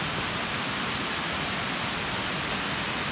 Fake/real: real